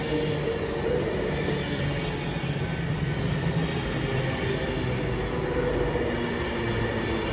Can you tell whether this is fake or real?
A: real